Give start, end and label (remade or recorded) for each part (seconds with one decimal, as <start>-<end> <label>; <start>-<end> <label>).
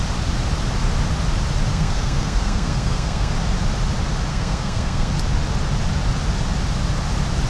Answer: 0.0-1.7 recorded; 1.7-3.3 remade; 3.3-4.3 recorded; 4.3-5.1 remade; 5.1-7.5 recorded